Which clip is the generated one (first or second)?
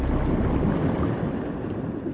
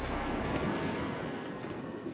second